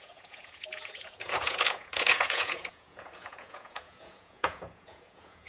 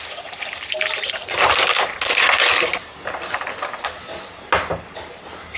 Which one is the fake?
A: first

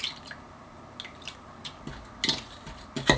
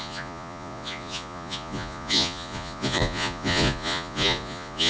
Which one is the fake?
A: second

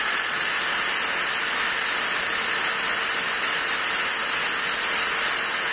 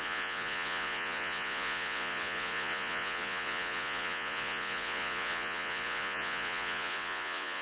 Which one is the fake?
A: second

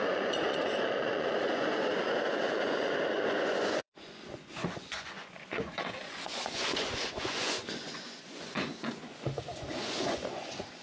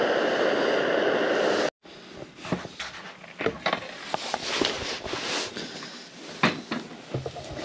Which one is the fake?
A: first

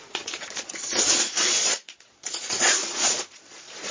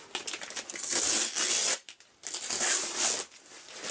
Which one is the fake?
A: first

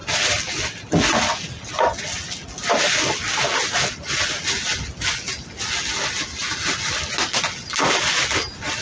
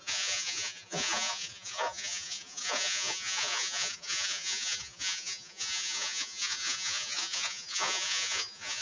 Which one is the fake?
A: second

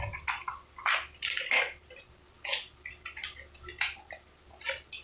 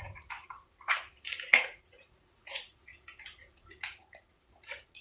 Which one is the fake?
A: second